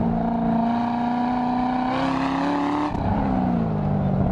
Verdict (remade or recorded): recorded